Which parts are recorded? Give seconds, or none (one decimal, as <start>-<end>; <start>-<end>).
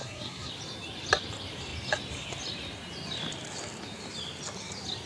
0.5-5.1